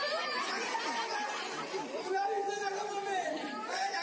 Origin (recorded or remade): recorded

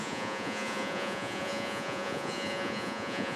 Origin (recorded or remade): remade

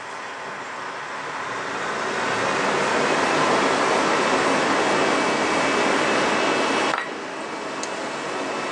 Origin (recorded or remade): recorded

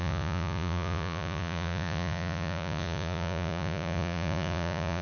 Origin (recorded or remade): remade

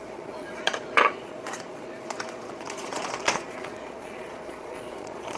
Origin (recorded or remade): remade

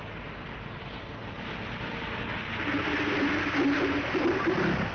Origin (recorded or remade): recorded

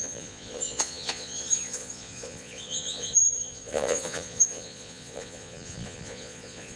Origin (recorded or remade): remade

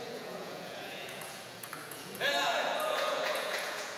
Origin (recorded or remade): remade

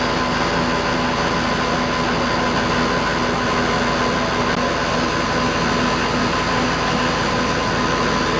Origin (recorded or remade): recorded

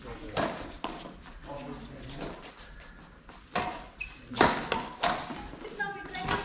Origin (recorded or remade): recorded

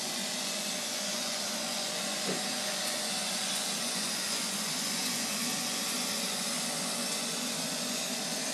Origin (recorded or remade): remade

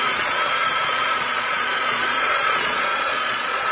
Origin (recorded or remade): remade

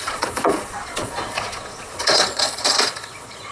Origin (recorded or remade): remade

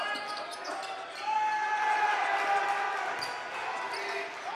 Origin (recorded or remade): recorded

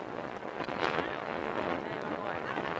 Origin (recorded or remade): remade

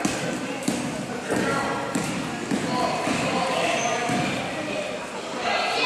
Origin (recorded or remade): recorded